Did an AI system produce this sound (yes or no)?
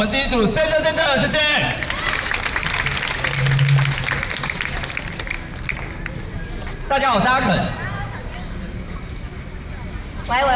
no